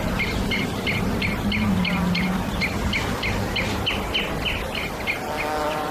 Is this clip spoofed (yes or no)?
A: no